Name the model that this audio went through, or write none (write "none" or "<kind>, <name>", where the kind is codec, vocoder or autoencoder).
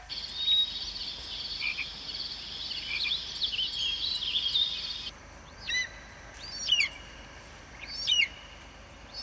vocoder, BigVGAN v2